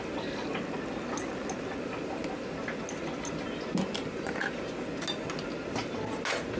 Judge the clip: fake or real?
real